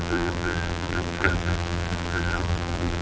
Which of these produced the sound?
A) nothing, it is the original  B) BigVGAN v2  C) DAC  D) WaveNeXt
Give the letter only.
B